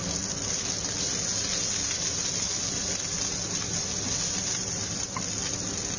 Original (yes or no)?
yes